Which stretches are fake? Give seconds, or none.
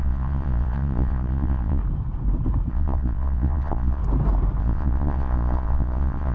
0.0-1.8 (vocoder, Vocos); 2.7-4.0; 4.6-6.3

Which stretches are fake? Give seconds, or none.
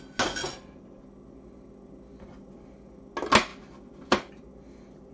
none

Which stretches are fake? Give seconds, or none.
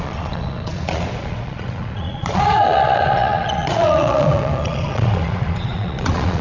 0.0-6.4 (vocoder, Vocos)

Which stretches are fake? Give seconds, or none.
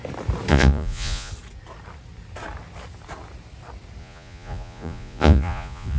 0.5-1.3 (vocoder, Vocos); 4.0-6.0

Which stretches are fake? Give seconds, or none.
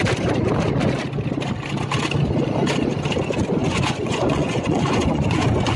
3.6-5.8 (vocoder, Vocos)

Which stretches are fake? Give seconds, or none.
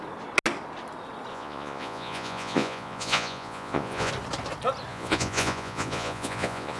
1.3-4.1 (vocoder, Vocos); 4.9-6.8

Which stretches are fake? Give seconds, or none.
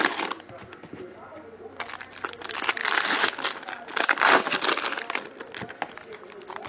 none